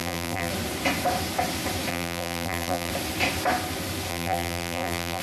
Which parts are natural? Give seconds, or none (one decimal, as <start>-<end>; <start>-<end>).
0.5-1.9; 2.9-4.1